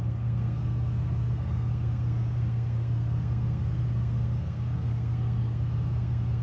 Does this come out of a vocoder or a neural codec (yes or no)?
yes